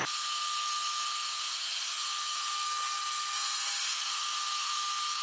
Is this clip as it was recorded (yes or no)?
no